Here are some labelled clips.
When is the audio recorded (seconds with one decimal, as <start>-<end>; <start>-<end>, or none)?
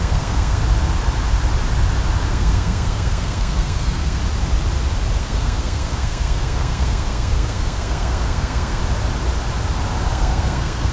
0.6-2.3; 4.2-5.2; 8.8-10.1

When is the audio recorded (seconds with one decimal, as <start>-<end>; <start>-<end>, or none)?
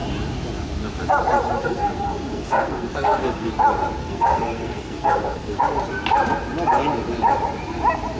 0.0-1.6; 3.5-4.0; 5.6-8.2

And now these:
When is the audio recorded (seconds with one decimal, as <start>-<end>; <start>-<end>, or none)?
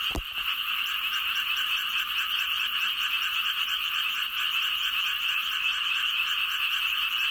0.0-7.3